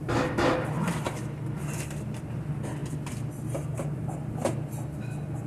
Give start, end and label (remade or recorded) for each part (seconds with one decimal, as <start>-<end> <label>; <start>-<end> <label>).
0.0-2.8 recorded; 2.8-3.3 remade; 3.3-3.7 recorded; 3.7-4.4 remade; 4.4-5.5 recorded